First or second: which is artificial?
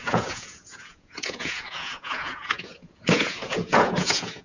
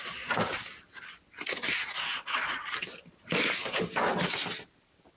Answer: first